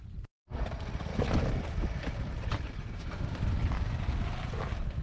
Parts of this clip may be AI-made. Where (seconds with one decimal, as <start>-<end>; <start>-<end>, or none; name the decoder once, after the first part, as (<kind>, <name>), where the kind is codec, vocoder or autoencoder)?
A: 1.1-3.6 (vocoder, BigVGAN v2)